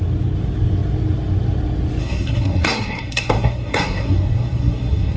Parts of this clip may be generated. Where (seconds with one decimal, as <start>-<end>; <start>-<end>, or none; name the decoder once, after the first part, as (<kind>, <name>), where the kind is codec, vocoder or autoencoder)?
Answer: 2.0-5.2 (codec, SNAC)